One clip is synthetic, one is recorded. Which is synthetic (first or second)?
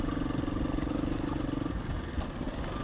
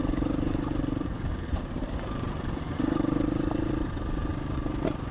second